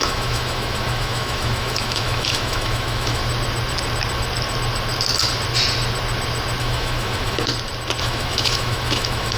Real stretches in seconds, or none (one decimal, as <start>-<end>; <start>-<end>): 3.2-6.6; 7.5-8.0